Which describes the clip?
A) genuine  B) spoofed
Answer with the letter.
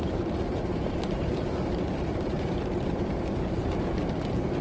A